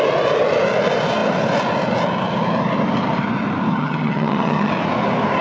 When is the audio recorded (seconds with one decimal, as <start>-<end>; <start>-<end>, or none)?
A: 0.0-3.7; 4.7-5.4